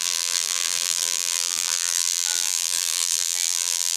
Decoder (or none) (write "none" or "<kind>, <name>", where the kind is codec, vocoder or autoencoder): vocoder, BigVGAN v2